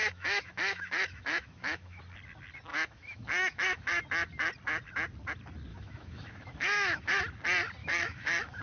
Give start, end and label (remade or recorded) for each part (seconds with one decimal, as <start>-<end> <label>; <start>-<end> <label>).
0.0-2.0 remade; 2.0-2.7 recorded; 2.7-4.0 remade; 4.0-5.7 recorded; 5.7-7.2 remade; 7.2-7.8 recorded; 7.8-8.6 remade